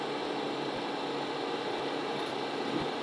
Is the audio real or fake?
real